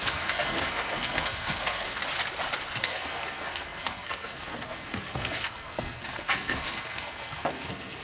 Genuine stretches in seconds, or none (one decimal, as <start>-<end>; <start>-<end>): 2.0-2.8